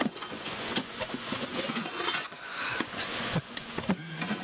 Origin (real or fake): fake